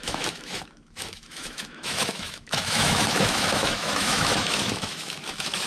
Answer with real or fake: fake